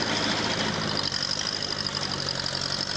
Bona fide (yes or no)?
yes